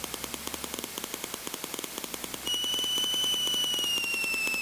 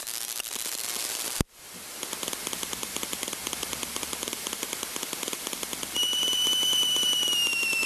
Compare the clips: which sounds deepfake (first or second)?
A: second